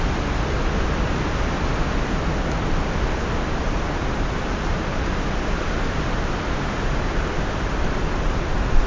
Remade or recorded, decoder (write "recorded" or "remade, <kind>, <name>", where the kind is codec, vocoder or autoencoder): recorded